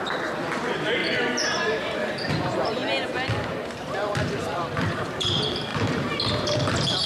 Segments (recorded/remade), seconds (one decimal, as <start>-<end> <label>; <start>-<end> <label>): 0.0-1.0 remade; 1.0-2.3 recorded; 2.3-2.8 remade; 2.8-3.8 recorded; 3.8-5.7 remade; 5.7-6.3 recorded; 6.3-7.1 remade